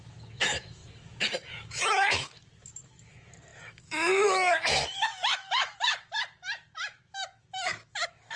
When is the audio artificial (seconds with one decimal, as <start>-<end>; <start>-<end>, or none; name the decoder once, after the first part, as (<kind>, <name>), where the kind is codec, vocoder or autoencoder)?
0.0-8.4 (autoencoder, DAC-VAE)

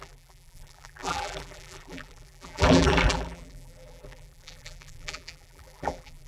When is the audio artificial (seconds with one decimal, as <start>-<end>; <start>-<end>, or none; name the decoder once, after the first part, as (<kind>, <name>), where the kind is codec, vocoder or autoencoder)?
0.0-6.3 (vocoder, BigVGAN v2)

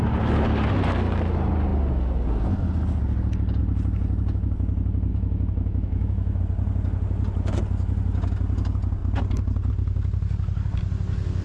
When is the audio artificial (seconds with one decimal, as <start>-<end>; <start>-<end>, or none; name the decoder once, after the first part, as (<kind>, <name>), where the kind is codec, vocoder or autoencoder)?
5.1-6.4 (autoencoder, DAC-VAE)